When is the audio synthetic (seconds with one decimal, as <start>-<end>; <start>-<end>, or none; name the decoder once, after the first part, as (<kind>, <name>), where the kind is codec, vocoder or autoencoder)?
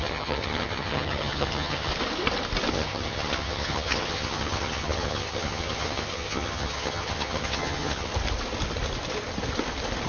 0.0-1.9 (vocoder, HiFi-GAN); 2.7-8.1